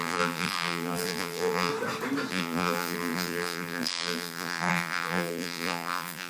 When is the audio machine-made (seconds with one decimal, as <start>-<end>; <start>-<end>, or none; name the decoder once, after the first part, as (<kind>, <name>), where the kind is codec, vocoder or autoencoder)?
0.0-1.7 (vocoder, BigVGAN v2); 2.3-6.3

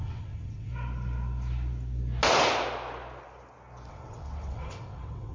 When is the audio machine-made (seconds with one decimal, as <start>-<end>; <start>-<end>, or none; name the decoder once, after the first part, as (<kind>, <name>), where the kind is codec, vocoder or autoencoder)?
0.0-0.7 (vocoder, WaveNeXt); 3.9-5.3

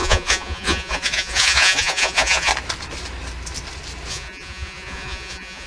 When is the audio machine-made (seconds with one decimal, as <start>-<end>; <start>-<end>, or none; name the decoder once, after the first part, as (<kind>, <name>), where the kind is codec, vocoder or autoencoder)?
0.0-2.5 (vocoder, Vocos); 4.1-5.7

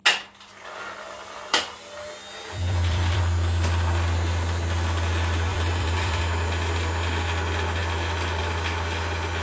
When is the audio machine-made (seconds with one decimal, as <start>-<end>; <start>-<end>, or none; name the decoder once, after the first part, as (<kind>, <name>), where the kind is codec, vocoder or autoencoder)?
2.2-3.2 (vocoder, BigVGAN v2); 5.5-6.2

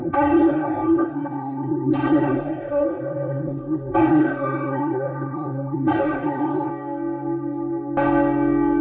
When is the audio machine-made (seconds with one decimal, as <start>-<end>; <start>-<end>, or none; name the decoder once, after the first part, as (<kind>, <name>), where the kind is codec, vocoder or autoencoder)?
0.0-6.7 (codec, SNAC)

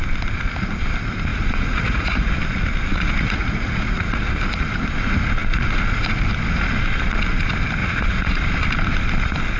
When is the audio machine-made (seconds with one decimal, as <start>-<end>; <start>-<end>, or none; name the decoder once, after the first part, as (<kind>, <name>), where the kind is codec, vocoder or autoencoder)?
1.3-2.3 (vocoder, Vocos); 2.9-4.3; 7.8-8.4

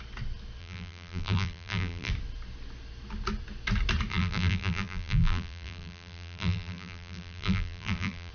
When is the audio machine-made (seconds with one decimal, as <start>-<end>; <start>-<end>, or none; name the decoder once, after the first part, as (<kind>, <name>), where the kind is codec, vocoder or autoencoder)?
0.6-2.1 (vocoder, BigVGAN v2); 4.1-8.3

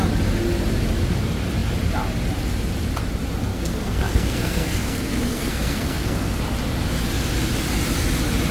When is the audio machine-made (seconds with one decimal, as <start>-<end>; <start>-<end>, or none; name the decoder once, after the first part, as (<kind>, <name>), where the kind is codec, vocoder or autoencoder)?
3.5-6.4 (codec, SNAC)